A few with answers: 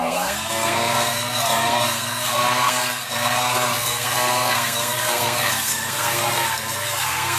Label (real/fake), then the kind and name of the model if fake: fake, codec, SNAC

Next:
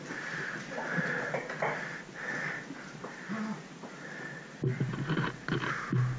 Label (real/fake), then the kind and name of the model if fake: real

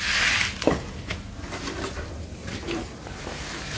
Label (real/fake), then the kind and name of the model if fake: real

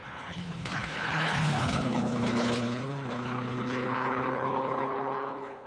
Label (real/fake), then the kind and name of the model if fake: fake, codec, HILCodec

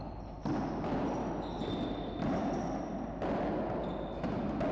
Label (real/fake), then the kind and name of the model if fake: real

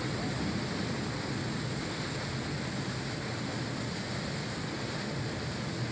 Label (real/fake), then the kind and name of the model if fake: real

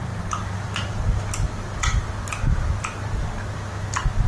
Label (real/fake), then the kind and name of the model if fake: real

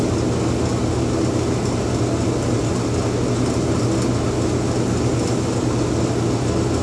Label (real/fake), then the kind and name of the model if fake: real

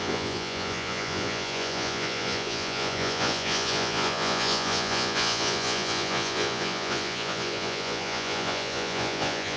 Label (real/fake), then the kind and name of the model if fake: fake, vocoder, Vocos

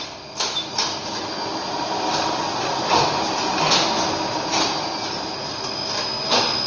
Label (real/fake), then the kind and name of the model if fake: real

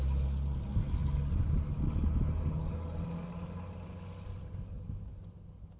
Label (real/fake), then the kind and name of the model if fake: real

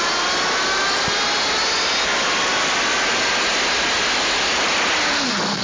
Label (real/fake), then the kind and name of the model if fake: real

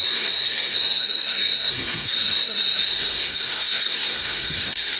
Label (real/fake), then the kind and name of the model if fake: fake, codec, SNAC